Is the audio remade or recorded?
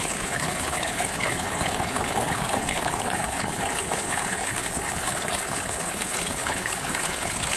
remade